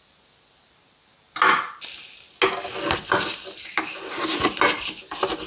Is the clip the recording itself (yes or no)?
yes